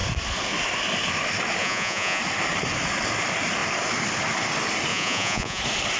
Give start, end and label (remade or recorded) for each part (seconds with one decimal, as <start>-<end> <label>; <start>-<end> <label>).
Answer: 0.0-1.6 recorded; 1.6-2.2 remade; 2.2-4.9 recorded; 4.9-5.6 remade; 5.6-6.0 recorded